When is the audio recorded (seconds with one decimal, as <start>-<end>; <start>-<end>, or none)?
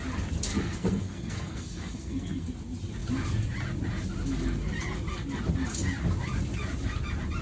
0.0-0.5; 2.5-7.4